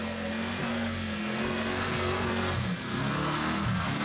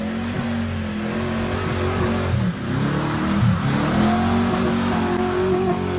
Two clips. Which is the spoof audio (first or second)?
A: first